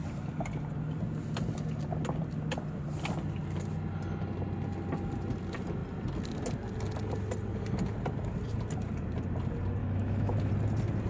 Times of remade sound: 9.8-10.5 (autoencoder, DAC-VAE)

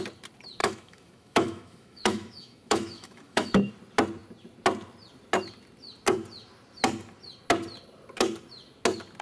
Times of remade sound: 0.6-3.7 (autoencoder, DAC-VAE)

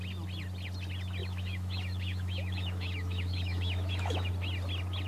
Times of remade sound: 1.2-4.3 (autoencoder, DAC-VAE)

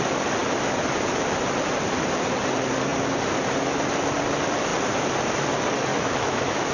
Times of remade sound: 5.9-6.7 (autoencoder, DAC-VAE)

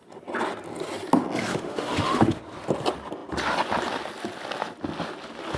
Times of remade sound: 1.5-2.4 (autoencoder, DAC-VAE)

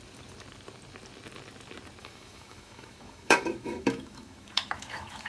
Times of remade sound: 2.0-5.3 (autoencoder, DAC-VAE)

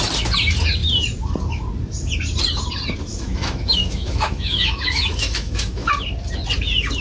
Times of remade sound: 3.1-5.9 (autoencoder, DAC-VAE)